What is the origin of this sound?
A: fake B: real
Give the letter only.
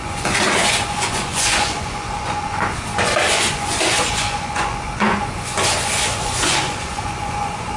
A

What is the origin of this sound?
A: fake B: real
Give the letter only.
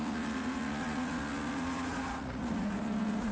A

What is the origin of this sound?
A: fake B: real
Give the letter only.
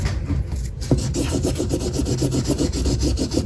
B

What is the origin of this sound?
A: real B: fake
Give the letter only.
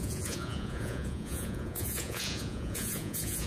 B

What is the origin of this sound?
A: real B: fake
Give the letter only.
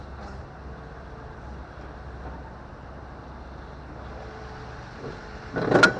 A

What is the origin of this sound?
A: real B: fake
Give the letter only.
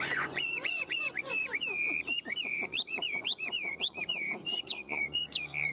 B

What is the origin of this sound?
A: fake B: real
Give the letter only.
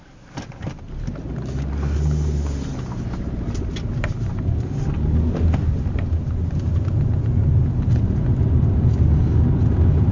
B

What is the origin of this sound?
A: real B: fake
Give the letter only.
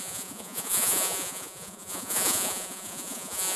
B